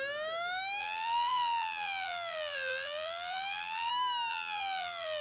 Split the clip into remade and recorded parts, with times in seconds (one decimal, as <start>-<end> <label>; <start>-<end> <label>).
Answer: 0.0-0.8 recorded; 0.8-3.9 remade; 3.9-4.3 recorded; 4.3-5.2 remade